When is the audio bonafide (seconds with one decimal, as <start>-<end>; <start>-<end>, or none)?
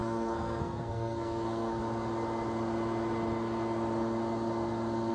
1.8-5.1